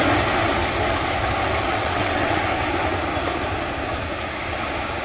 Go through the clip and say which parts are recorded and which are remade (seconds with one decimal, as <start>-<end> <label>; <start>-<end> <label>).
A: 0.0-1.7 recorded; 1.7-2.4 remade; 2.4-5.0 recorded